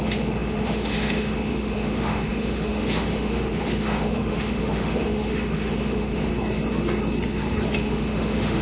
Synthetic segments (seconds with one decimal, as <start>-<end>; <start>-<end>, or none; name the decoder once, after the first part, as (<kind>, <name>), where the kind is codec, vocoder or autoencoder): 0.0-6.3 (autoencoder, DAC-VAE); 7.7-8.6